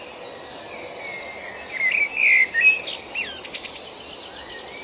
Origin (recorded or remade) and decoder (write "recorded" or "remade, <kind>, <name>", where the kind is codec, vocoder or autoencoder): recorded